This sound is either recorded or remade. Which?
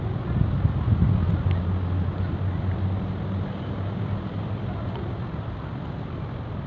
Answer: recorded